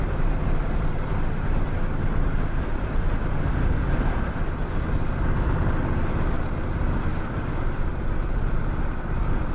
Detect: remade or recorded recorded